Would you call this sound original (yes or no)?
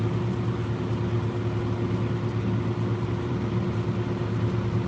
yes